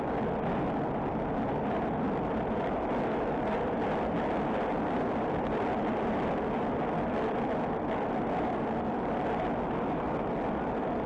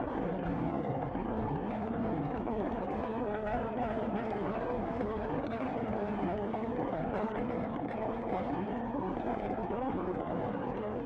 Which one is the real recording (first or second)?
first